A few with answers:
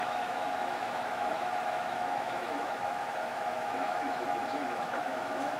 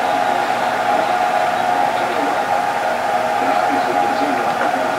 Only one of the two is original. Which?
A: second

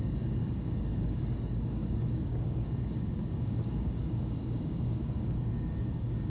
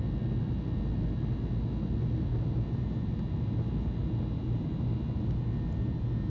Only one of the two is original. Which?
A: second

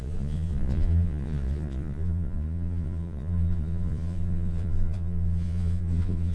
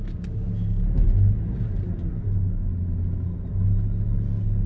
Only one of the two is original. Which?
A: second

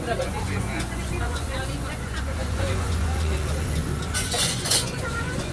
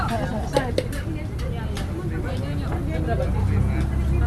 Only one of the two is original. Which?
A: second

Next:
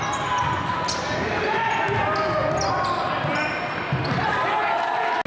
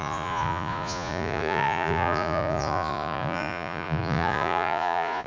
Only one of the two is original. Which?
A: first